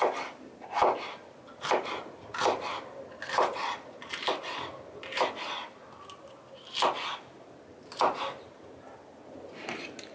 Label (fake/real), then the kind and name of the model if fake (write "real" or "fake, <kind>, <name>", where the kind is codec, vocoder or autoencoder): real